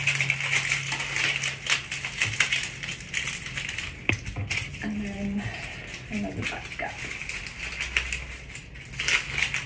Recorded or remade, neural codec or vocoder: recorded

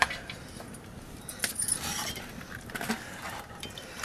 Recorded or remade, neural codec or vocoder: remade, vocoder, BigVGAN v2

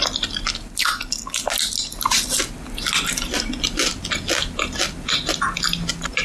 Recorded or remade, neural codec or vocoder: recorded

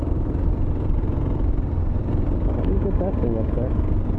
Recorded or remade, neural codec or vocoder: remade, vocoder, BigVGAN v2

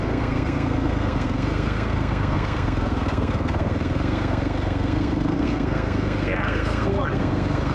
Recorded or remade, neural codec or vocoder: remade, codec, SNAC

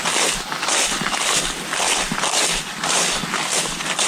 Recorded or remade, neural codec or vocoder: recorded